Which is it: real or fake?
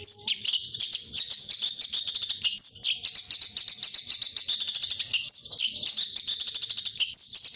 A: real